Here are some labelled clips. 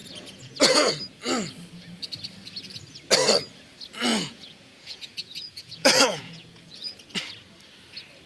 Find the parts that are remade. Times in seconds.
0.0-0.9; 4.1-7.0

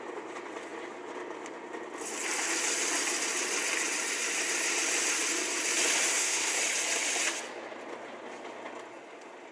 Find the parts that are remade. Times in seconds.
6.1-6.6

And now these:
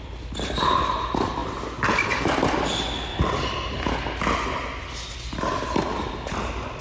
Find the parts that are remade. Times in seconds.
none

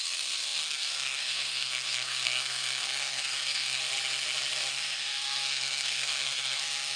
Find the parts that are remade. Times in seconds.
0.0-3.8; 4.7-7.0

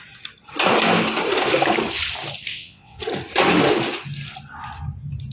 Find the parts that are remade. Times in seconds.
2.5-3.0

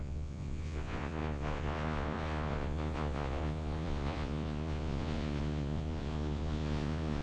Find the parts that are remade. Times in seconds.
0.0-7.2